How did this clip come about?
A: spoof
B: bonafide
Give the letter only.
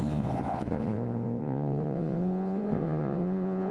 A